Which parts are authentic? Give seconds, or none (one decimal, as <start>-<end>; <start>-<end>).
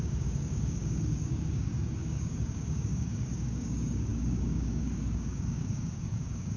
none